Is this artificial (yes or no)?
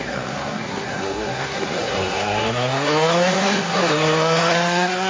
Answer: yes